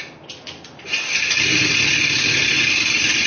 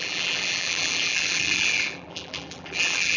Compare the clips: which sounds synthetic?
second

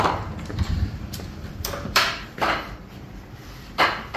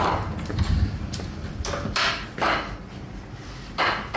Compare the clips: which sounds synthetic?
first